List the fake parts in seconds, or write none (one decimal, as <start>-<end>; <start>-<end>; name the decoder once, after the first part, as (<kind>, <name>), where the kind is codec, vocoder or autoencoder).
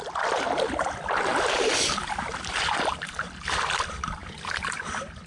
none